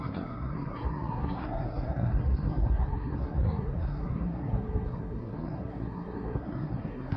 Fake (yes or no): yes